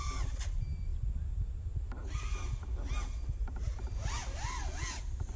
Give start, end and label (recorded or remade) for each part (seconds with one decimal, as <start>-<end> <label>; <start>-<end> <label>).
0.0-5.4 recorded